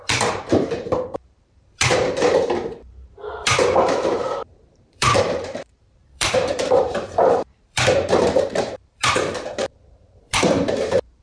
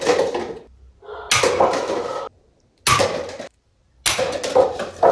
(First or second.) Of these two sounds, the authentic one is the second